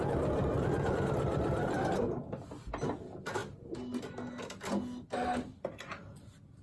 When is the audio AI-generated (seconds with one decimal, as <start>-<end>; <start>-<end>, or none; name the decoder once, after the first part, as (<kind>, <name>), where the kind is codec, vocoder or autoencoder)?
none